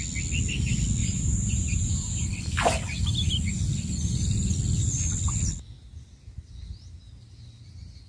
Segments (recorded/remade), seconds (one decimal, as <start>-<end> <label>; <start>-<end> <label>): 0.0-1.0 recorded; 1.0-2.3 remade; 2.3-8.1 recorded